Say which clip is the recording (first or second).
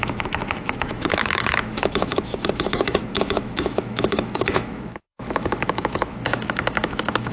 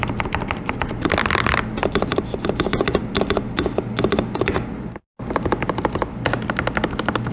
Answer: second